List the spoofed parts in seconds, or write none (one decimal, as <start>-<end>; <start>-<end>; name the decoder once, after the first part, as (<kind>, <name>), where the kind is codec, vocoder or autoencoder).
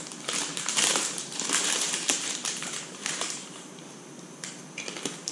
0.5-3.7 (vocoder, BigVGAN v2)